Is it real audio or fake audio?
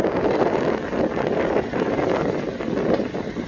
real